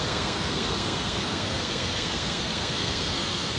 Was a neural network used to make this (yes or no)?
yes